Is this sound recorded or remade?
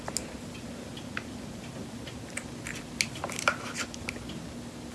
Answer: recorded